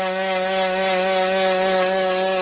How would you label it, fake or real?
real